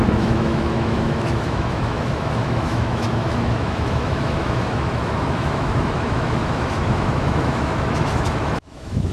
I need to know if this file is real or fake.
fake